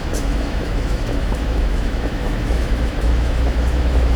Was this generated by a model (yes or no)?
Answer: yes